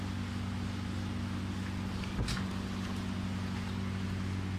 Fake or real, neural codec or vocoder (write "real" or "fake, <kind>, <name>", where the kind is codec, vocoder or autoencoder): real